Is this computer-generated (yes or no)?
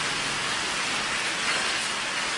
no